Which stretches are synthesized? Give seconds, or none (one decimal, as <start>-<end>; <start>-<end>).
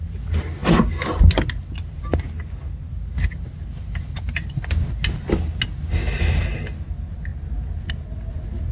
none